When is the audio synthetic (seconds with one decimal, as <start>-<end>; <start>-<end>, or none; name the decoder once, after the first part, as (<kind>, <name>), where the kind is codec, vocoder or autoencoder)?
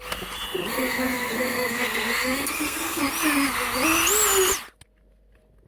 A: 0.7-3.0 (codec, SNAC)